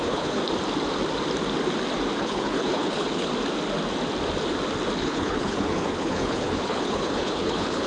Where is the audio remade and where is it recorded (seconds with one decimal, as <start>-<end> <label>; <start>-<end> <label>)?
0.0-0.4 remade; 0.4-2.2 recorded; 2.2-3.3 remade; 3.3-5.0 recorded; 5.0-7.9 remade